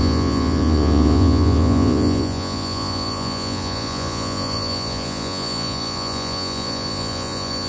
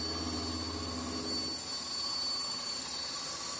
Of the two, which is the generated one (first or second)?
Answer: first